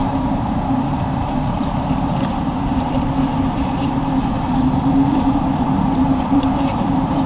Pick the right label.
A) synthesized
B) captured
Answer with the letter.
A